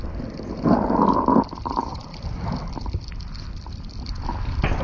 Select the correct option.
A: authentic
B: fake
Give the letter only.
A